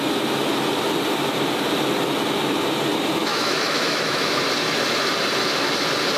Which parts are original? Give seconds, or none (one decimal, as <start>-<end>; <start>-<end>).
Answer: 0.0-3.2; 4.4-6.2